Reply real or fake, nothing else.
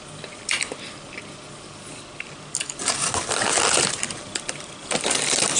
real